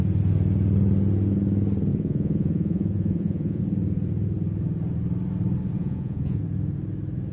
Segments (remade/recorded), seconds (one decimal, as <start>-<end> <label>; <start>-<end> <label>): 0.0-1.9 recorded; 1.9-3.6 remade; 3.6-5.8 recorded; 5.8-6.4 remade; 6.4-7.3 recorded